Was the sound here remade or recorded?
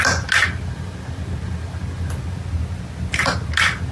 recorded